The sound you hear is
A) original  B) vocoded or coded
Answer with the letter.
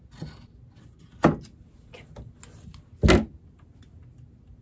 A